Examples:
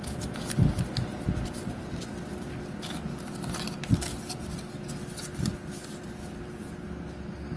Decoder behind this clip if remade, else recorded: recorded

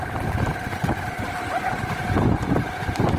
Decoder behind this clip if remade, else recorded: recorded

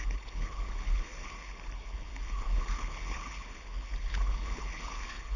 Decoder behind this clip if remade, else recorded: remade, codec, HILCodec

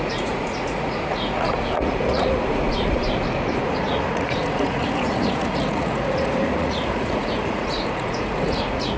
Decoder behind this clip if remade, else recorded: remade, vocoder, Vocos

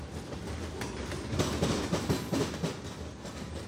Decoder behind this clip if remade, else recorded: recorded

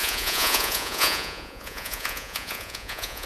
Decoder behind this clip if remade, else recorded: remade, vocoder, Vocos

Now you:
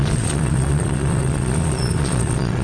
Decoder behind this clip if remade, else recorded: remade, vocoder, Vocos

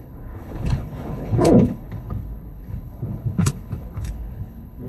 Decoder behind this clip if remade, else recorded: remade, codec, HILCodec